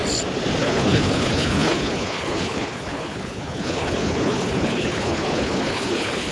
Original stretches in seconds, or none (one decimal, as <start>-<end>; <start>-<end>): 0.0-0.6